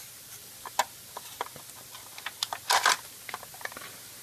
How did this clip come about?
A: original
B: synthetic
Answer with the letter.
A